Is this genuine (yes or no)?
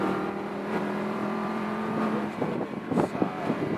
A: no